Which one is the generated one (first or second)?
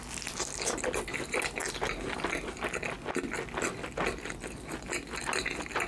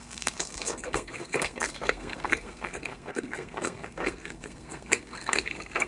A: second